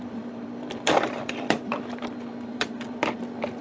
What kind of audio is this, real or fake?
fake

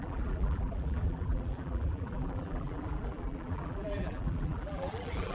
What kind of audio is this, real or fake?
fake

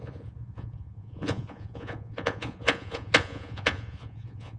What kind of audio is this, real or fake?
fake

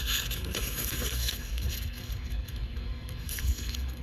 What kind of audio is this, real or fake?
fake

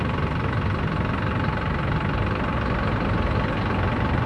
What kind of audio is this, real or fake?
real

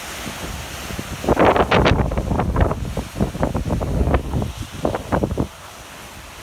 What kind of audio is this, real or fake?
real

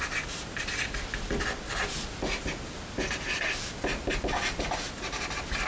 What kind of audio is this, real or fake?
real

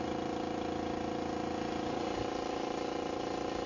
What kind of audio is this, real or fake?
real